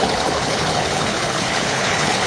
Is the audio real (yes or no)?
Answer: no